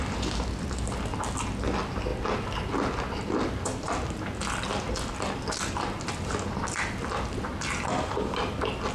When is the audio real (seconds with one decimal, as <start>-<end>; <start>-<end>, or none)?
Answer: 0.0-8.9

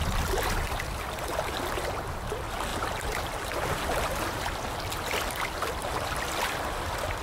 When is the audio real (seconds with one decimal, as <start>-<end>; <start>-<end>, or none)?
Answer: 0.0-7.2

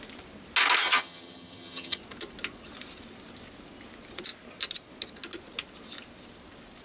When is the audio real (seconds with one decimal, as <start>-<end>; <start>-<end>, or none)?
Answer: 0.0-0.8; 2.0-6.8